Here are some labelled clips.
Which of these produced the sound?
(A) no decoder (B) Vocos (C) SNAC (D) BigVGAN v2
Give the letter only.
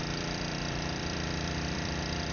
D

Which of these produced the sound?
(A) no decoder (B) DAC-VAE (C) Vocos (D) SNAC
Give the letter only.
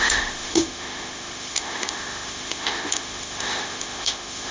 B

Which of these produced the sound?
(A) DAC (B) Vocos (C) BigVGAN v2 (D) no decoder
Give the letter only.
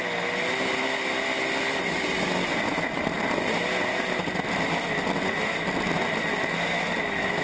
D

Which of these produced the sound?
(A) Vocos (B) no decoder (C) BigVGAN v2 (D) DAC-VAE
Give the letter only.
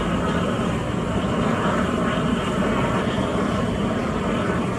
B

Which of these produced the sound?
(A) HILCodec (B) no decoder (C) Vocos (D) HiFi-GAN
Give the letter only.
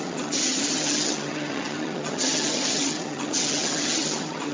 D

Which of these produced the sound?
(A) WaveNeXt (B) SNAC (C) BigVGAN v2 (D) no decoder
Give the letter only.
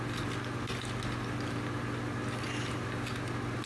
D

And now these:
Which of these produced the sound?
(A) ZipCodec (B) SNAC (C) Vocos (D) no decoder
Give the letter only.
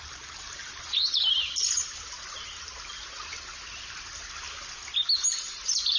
D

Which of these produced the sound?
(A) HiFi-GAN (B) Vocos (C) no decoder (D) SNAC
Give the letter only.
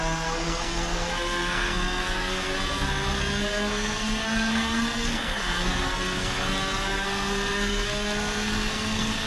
D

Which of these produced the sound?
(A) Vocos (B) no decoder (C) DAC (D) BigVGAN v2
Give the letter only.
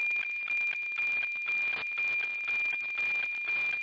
B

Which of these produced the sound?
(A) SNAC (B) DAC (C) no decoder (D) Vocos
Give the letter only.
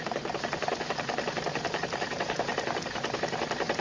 C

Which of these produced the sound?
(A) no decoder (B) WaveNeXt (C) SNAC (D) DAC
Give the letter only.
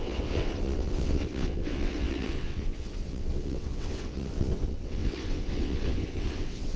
B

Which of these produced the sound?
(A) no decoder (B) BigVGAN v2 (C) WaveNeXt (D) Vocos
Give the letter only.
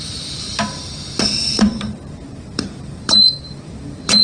B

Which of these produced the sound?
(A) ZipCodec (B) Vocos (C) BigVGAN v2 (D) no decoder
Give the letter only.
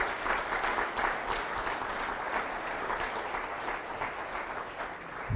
D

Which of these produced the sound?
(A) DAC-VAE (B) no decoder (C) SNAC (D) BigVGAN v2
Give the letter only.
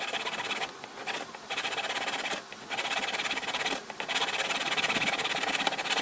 B